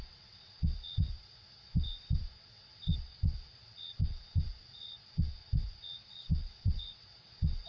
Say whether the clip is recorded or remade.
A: remade